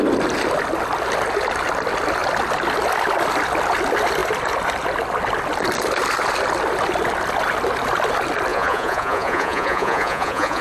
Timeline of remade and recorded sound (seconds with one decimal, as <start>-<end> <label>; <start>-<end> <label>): 0.0-8.5 recorded; 8.5-10.6 remade